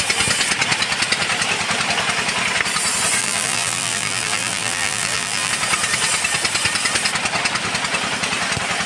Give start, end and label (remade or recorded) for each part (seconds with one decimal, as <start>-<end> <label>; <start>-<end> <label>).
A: 0.0-3.2 recorded; 3.2-5.5 remade; 5.5-8.9 recorded